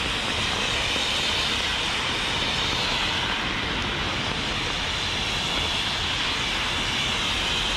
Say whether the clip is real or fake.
real